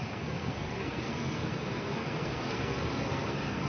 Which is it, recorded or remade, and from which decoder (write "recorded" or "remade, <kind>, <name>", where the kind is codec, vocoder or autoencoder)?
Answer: remade, codec, SNAC